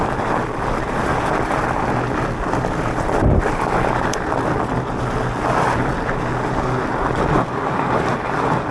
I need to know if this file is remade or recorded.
recorded